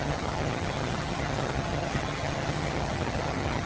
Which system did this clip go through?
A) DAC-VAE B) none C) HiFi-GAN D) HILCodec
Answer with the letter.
C